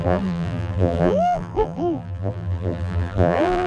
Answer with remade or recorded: remade